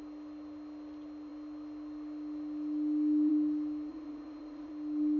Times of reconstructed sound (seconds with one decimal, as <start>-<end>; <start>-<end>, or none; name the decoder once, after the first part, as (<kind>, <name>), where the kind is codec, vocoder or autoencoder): 3.9-4.7 (vocoder, Vocos)